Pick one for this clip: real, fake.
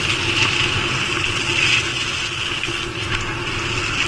real